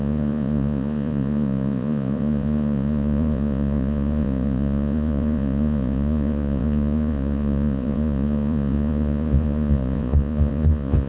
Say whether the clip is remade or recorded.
remade